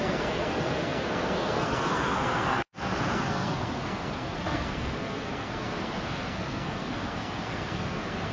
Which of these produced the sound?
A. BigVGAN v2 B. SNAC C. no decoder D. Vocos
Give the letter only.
B